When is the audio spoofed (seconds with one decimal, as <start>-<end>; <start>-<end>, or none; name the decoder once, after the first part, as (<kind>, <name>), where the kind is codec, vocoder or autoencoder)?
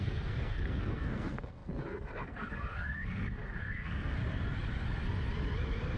0.0-4.2 (codec, SNAC)